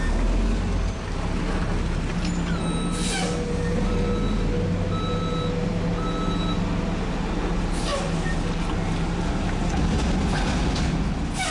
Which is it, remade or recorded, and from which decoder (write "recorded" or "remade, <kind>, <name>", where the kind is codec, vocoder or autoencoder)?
recorded